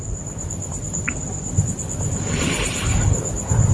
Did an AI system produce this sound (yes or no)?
no